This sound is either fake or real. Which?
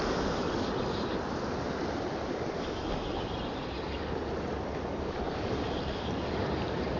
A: real